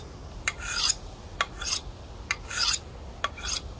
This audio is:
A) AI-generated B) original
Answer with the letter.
B